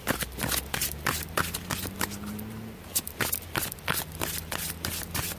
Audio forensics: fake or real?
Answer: fake